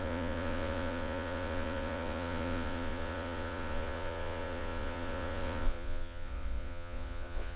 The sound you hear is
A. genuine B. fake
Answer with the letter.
B